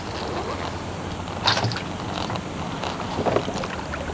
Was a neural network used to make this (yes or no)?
no